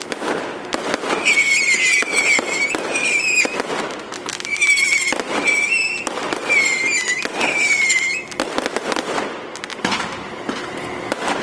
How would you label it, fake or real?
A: real